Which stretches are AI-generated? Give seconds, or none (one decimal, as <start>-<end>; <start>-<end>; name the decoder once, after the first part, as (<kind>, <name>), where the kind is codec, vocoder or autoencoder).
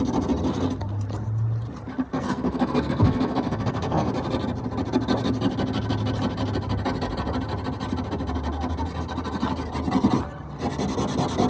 2.1-4.1 (codec, SNAC)